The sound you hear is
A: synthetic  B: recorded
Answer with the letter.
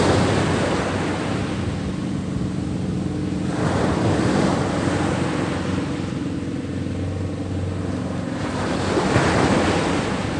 B